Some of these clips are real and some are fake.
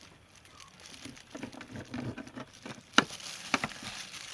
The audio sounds real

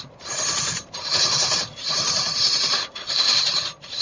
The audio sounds fake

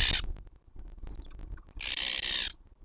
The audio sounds real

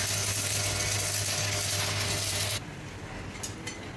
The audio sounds real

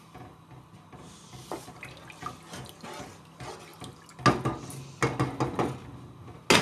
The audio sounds real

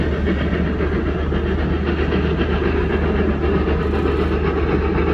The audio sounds real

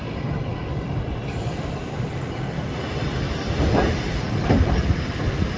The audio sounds fake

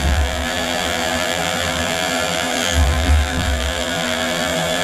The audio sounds fake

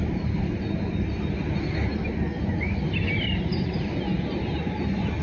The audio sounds real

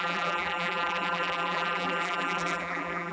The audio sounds fake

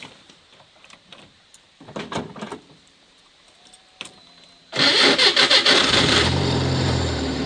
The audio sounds fake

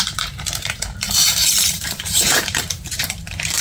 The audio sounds fake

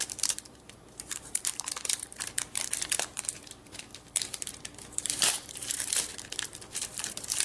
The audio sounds fake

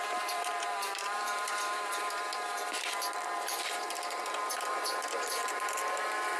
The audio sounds fake